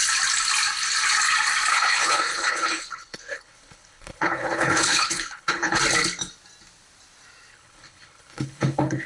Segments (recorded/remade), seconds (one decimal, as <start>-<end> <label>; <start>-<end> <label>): 0.0-1.7 recorded; 1.7-5.8 remade; 5.8-7.5 recorded; 7.5-9.1 remade